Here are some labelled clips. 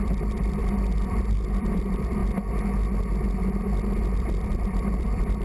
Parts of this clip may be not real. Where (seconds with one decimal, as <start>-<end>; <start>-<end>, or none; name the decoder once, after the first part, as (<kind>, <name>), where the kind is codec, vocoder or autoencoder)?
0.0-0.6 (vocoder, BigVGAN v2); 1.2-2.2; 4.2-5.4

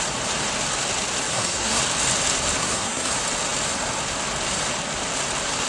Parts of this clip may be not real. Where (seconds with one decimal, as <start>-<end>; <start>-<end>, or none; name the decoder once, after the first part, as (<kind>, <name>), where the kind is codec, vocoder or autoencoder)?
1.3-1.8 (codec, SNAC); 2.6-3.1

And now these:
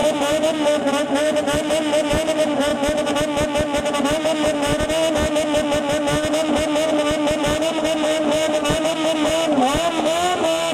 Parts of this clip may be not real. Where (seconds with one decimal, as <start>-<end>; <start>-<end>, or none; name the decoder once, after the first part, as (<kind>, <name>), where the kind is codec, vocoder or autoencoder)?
0.0-2.7 (vocoder, BigVGAN v2); 3.8-4.7; 7.4-10.7